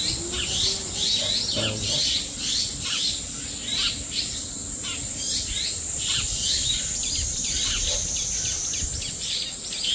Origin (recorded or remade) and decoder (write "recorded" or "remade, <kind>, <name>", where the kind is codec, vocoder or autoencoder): recorded